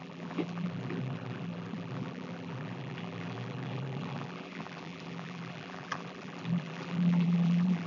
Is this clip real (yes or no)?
no